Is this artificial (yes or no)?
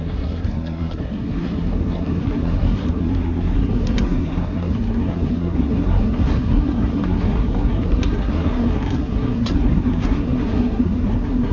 yes